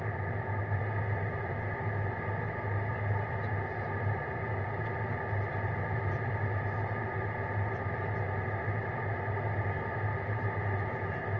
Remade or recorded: recorded